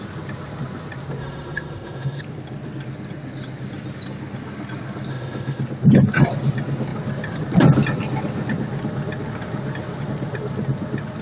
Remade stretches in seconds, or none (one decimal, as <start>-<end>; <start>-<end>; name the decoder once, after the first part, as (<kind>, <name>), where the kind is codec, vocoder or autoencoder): 1.2-2.2 (autoencoder, DAC-VAE); 5.1-5.6